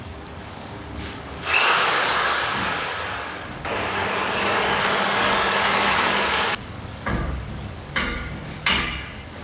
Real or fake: fake